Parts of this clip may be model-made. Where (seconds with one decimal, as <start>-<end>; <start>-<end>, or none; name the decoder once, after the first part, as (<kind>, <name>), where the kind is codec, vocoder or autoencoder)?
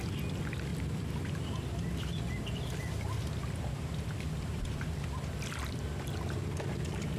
none